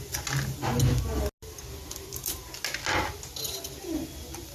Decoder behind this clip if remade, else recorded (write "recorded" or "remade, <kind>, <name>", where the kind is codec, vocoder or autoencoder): recorded